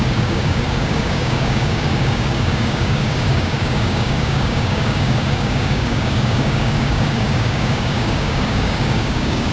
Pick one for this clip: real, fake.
fake